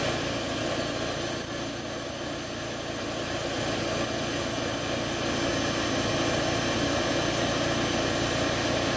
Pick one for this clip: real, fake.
real